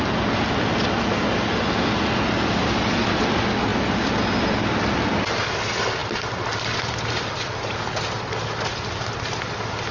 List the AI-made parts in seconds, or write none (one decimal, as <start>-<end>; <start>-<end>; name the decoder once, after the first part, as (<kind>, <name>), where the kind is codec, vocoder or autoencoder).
none